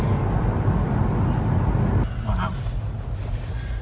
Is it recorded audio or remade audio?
recorded